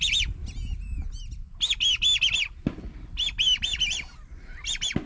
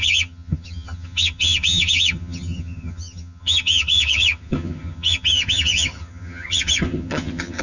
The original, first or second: first